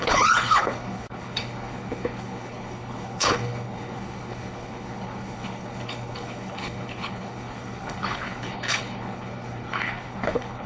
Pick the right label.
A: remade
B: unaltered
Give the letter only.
A